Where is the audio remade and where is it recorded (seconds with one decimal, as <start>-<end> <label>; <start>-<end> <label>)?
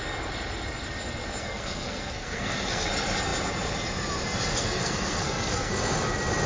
0.0-1.4 recorded; 1.4-2.9 remade; 2.9-4.5 recorded; 4.5-5.7 remade; 5.7-6.5 recorded